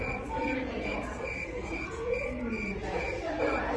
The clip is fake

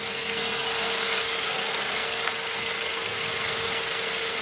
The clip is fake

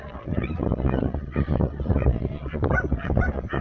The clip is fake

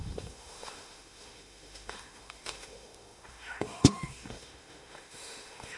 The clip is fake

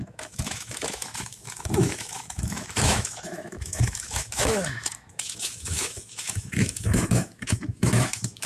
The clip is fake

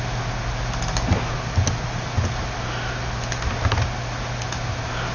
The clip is real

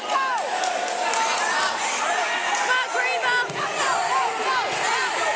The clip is real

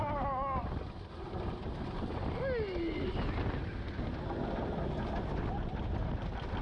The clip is real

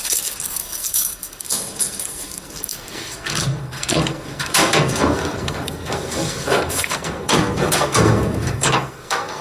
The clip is fake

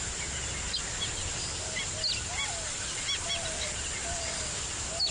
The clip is real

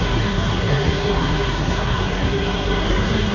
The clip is fake